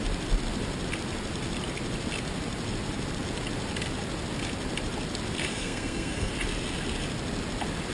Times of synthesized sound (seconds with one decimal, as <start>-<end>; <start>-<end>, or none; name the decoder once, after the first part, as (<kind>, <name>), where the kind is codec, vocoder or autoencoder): 5.5-6.3 (codec, SNAC)